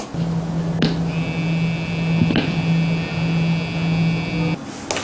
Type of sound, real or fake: real